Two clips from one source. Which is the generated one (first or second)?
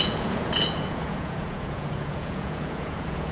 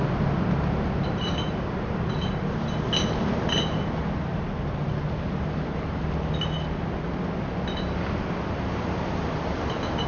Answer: first